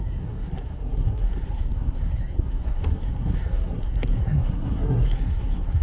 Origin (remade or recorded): remade